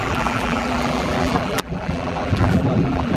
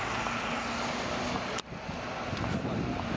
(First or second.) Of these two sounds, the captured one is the second